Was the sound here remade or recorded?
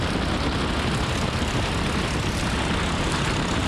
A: recorded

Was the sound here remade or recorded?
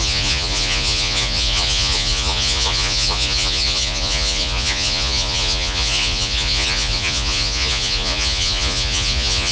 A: remade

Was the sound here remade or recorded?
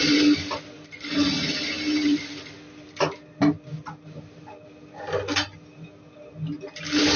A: recorded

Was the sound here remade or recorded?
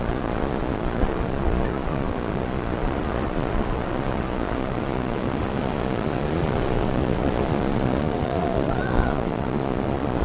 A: remade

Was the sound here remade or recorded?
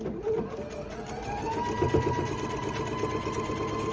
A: recorded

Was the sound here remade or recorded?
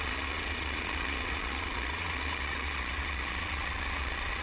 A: remade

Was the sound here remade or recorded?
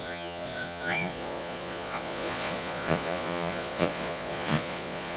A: remade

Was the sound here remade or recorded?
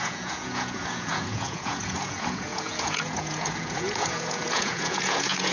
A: remade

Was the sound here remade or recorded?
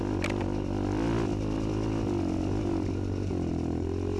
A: recorded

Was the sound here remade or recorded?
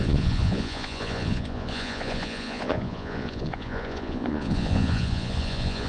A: remade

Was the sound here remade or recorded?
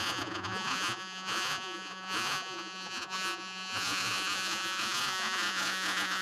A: remade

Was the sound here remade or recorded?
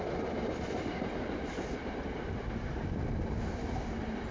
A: recorded